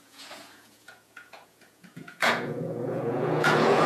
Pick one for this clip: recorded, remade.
remade